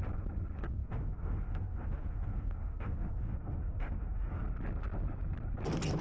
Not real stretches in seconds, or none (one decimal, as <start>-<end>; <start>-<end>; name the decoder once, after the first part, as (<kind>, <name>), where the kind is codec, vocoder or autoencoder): 0.8-4.4 (autoencoder, DAC-VAE)